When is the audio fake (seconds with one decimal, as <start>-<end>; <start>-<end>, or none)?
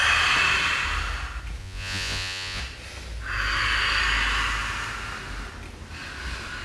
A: 1.6-2.6